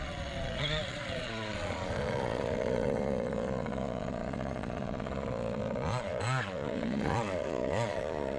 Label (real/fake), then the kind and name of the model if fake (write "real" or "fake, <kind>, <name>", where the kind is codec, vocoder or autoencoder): fake, vocoder, Vocos